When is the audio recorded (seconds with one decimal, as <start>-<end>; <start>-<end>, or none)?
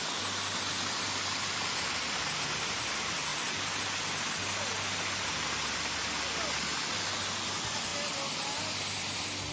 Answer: 0.0-9.5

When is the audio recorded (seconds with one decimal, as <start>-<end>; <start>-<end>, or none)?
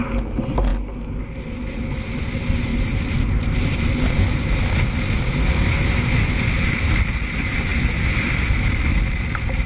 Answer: 0.0-9.7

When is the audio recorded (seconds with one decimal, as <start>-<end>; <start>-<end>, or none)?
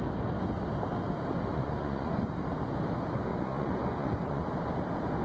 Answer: 0.0-1.5; 2.4-3.3; 4.5-5.2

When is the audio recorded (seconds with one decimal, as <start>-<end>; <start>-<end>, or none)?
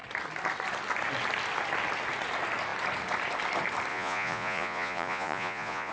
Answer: 0.0-3.9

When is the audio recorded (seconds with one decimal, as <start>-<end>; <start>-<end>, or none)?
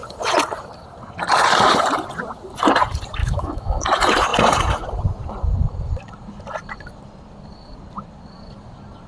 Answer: 0.0-3.2; 3.8-9.1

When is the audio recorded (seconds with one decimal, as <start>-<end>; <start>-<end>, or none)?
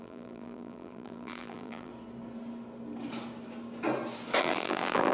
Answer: 1.9-4.4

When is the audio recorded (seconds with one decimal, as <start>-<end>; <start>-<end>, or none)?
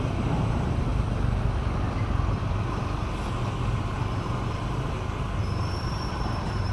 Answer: 0.9-3.7